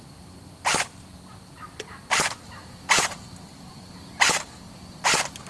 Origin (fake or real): real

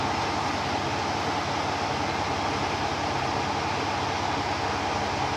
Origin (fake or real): real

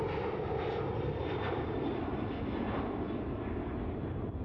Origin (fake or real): real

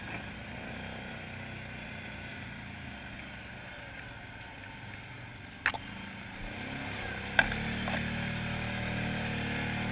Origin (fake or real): real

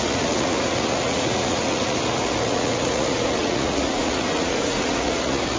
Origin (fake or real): fake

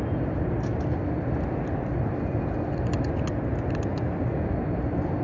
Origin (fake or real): real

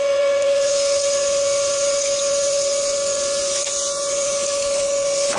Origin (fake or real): fake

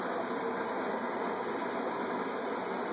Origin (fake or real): real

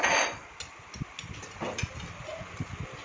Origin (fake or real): real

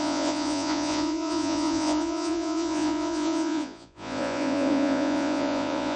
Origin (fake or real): fake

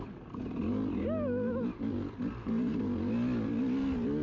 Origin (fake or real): real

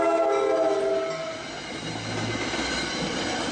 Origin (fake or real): real